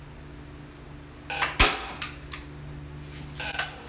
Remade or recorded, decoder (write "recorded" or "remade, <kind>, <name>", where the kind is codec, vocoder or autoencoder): recorded